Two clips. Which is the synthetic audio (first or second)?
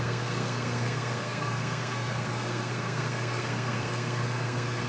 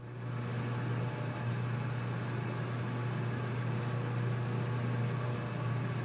first